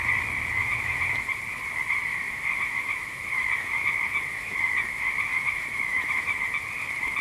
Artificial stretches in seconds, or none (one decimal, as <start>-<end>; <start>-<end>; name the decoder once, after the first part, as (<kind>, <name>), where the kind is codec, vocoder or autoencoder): 0.6-1.4 (autoencoder, DAC-VAE); 2.1-6.4